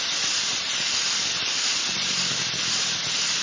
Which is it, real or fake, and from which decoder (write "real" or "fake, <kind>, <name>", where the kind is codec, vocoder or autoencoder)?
real